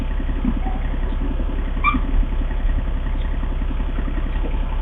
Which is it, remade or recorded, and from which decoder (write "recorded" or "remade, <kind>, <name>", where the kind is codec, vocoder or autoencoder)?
recorded